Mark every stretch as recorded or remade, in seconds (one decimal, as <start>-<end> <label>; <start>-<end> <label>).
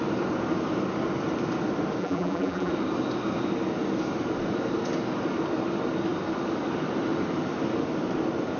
0.0-2.0 recorded; 2.0-2.7 remade; 2.7-8.6 recorded